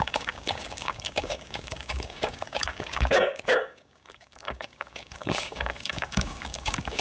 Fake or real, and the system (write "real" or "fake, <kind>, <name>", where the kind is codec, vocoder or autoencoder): fake, codec, DAC